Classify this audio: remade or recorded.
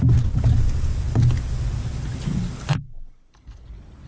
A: recorded